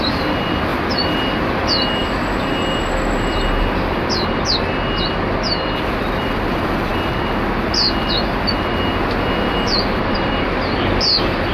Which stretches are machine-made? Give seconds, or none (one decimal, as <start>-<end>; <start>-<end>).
none